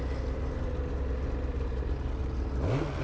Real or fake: real